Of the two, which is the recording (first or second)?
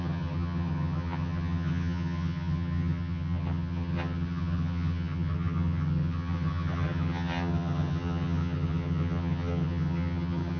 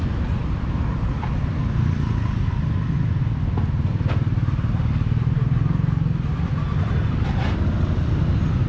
second